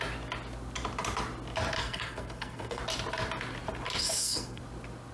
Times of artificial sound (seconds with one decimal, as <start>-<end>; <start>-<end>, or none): 1.8-2.8; 4.0-4.6